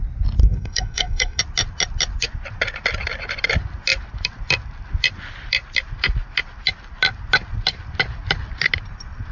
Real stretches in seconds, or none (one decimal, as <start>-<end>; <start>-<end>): 0.0-0.4; 1.4-9.3

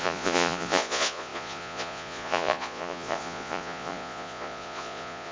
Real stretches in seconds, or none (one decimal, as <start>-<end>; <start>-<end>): none

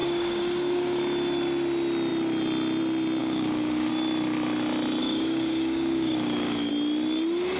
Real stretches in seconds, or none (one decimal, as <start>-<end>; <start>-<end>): 1.0-3.2; 3.9-5.0; 6.7-7.6